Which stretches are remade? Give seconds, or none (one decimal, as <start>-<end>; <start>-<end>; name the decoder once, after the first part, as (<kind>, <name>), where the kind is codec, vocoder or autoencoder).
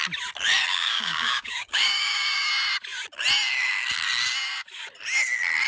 0.7-2.5 (codec, DAC)